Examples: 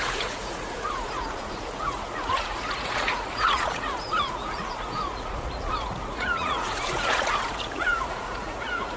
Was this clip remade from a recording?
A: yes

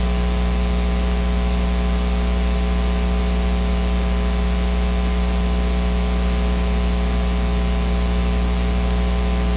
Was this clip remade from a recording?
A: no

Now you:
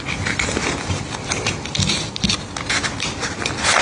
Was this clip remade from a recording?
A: no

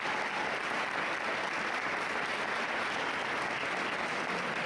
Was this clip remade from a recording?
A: no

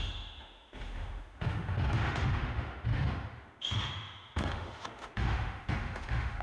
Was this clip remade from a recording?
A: yes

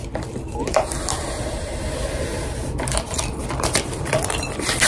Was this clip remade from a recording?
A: yes